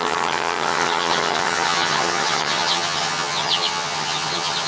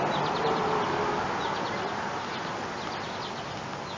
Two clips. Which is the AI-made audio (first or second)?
first